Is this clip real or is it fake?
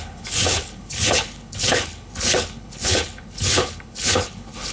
fake